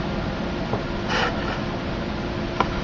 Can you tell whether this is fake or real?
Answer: real